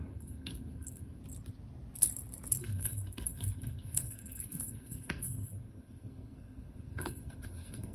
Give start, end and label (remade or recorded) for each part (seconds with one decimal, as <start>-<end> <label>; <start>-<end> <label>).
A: 0.0-1.2 remade; 1.2-2.6 recorded; 2.6-7.9 remade